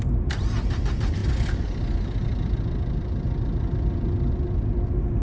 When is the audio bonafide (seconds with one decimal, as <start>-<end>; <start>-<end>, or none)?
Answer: 0.0-5.2